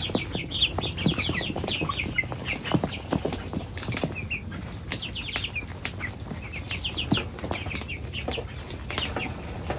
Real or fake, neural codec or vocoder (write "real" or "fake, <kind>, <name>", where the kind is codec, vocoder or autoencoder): real